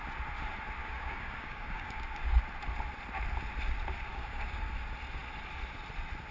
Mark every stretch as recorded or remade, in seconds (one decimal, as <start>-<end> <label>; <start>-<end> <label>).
0.0-0.8 recorded; 0.8-2.4 remade; 2.4-4.1 recorded; 4.1-4.7 remade; 4.7-6.3 recorded